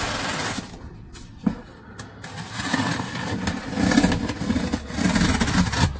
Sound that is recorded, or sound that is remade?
recorded